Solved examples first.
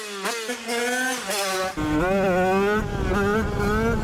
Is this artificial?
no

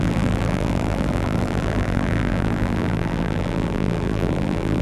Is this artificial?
yes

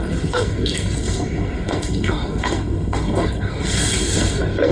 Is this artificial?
yes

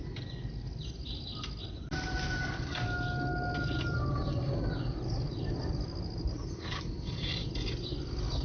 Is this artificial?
no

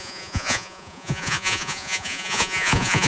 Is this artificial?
yes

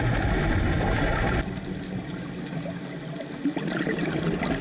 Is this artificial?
no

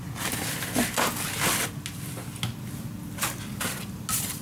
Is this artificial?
no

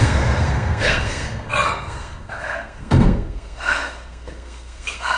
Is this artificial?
yes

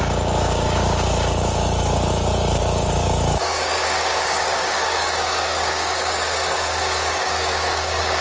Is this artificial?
yes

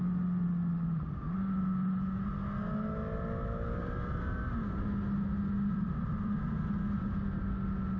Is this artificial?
no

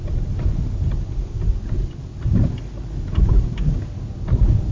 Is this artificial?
no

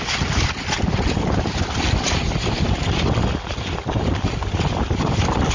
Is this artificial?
no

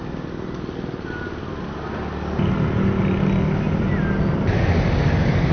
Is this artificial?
no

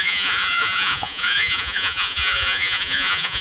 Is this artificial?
yes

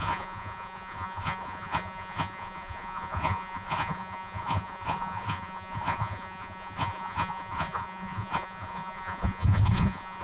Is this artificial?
yes